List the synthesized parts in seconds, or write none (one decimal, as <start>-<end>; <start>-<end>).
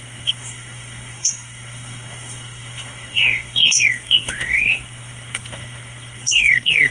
0.0-6.9